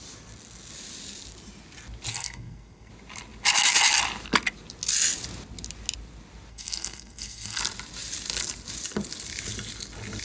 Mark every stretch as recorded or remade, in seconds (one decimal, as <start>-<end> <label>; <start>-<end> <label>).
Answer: 0.0-2.1 recorded; 2.1-2.9 remade; 2.9-6.5 recorded; 6.5-7.6 remade; 7.6-10.2 recorded